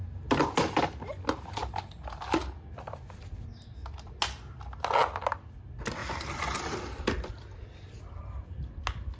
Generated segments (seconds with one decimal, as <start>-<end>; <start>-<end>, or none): 6.0-7.3